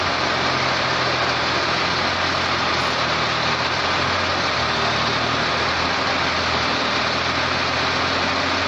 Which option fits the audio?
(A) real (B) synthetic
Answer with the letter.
B